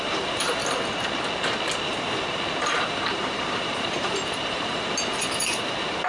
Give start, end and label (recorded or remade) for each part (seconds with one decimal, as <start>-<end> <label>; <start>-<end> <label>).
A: 0.0-0.6 remade; 0.6-2.6 recorded; 2.6-6.1 remade